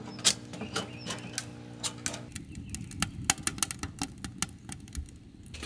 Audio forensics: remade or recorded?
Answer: recorded